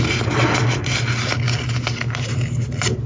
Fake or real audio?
real